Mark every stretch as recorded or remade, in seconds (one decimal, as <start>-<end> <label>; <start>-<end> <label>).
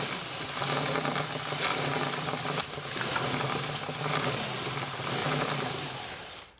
0.0-5.2 recorded; 5.2-6.0 remade; 6.0-6.6 recorded